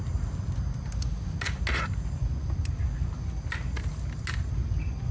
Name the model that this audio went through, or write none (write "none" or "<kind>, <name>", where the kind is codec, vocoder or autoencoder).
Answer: none